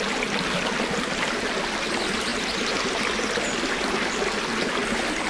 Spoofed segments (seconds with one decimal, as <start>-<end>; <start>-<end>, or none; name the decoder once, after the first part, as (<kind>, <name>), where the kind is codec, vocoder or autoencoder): none